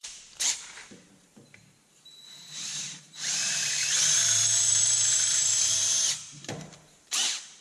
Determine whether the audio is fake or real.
fake